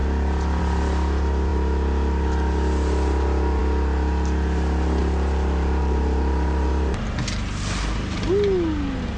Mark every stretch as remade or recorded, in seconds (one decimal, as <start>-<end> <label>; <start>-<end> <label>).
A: 0.0-5.0 recorded; 5.0-7.0 remade; 7.0-9.2 recorded